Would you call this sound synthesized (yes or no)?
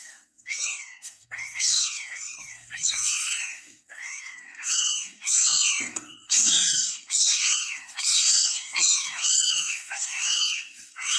yes